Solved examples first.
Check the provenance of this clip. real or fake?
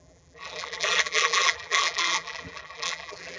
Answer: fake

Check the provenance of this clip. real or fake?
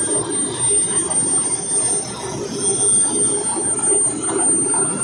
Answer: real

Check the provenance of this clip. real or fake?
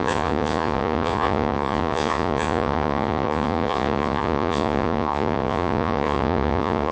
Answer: fake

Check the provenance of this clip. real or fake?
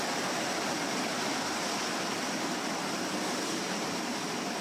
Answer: real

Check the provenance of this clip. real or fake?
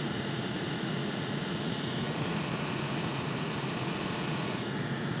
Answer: fake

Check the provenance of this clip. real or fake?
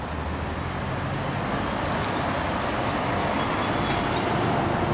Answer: real